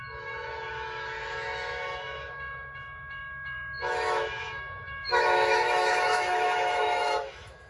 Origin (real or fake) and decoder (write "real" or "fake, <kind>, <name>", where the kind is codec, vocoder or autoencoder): fake, autoencoder, DAC-VAE